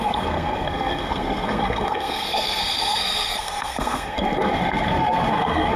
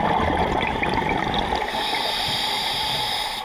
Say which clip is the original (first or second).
second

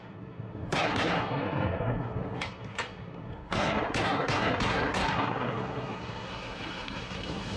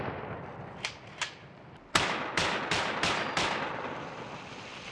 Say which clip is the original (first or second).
second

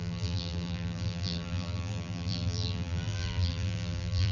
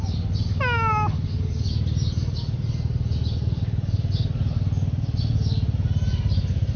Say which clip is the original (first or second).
second